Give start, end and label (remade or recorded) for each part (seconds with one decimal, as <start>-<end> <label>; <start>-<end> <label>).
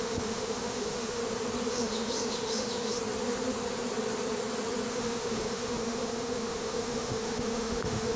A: 0.0-1.2 remade; 1.2-1.7 recorded; 1.7-3.0 remade; 3.0-4.9 recorded; 4.9-8.2 remade